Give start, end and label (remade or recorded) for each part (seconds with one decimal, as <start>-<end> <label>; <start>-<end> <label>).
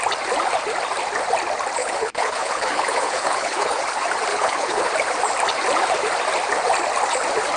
0.0-1.8 recorded; 1.8-3.8 remade; 3.8-4.3 recorded; 4.3-4.9 remade; 4.9-7.6 recorded